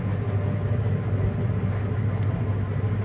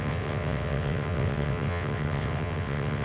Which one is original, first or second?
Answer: first